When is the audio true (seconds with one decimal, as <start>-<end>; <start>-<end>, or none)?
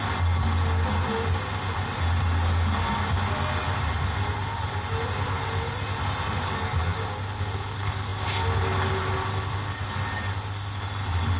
0.0-11.4